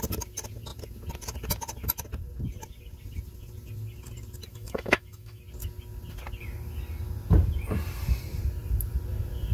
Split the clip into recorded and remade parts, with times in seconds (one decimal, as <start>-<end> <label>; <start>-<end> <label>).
0.0-4.5 recorded; 4.5-5.4 remade; 5.4-9.5 recorded